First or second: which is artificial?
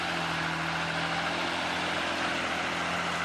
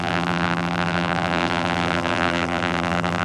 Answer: second